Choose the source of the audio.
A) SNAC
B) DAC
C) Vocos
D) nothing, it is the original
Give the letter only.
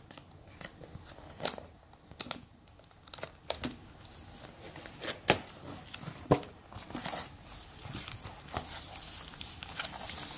D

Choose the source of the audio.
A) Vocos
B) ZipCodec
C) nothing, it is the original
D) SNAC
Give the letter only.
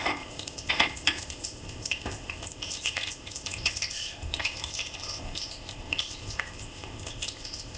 B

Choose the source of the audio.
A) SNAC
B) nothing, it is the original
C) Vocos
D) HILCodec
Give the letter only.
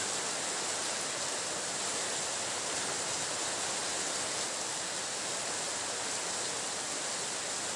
B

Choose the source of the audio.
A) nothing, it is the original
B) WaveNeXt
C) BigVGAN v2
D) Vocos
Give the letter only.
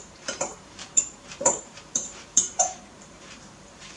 C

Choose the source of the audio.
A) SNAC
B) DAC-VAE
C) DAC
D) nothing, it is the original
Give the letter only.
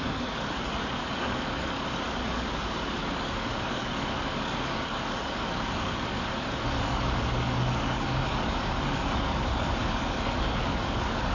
C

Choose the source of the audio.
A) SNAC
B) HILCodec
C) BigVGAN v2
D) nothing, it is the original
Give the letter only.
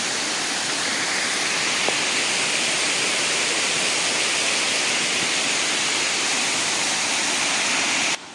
D